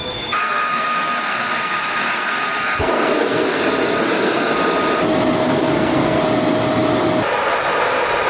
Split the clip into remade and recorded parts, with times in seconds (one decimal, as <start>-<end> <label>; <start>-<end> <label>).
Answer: 0.0-3.6 remade; 3.6-4.0 recorded; 4.0-4.5 remade; 4.5-5.4 recorded; 5.4-6.2 remade; 6.2-8.3 recorded